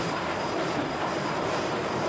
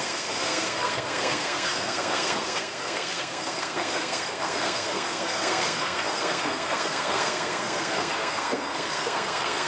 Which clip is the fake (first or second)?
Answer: second